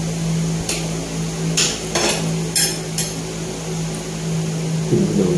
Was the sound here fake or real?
real